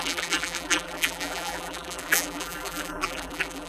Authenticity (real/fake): fake